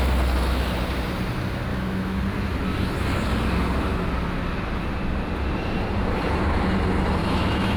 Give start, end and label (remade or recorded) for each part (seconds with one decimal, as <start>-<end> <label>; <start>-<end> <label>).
0.0-1.7 recorded; 1.7-2.2 remade; 2.2-7.2 recorded; 7.2-7.8 remade